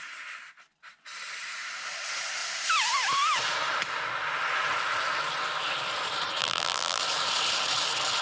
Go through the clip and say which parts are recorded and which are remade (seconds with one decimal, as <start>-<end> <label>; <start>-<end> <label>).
0.0-6.4 recorded; 6.4-7.0 remade; 7.0-8.2 recorded

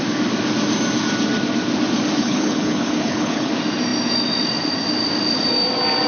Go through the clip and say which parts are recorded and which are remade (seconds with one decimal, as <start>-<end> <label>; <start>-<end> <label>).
0.0-2.2 recorded; 2.2-3.5 remade; 3.5-6.1 recorded

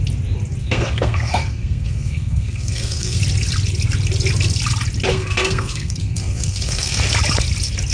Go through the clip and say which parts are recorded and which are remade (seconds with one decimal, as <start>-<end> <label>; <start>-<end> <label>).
0.0-0.6 recorded; 0.6-3.2 remade; 3.2-5.1 recorded; 5.1-7.0 remade; 7.0-7.9 recorded

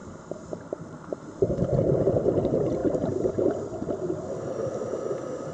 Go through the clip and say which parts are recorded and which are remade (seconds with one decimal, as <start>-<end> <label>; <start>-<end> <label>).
0.0-1.6 remade; 1.6-2.8 recorded; 2.8-3.5 remade; 3.5-5.5 recorded

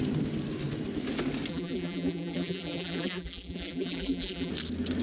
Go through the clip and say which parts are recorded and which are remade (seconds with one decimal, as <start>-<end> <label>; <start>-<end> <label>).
0.0-1.5 recorded; 1.5-4.5 remade; 4.5-5.0 recorded